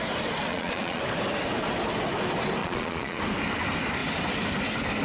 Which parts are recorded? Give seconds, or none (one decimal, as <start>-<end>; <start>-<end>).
0.0-0.5; 1.0-2.6; 3.2-5.0